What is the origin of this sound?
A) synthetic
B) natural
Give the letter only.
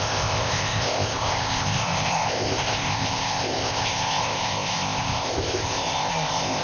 A